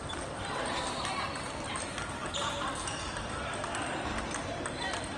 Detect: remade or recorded recorded